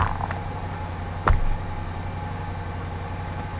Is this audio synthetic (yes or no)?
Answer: no